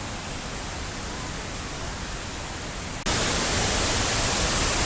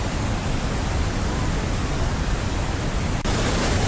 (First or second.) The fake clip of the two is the second